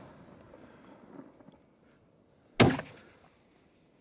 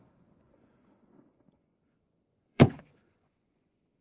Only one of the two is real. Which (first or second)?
first